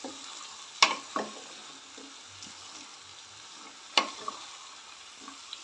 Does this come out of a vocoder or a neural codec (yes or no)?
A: no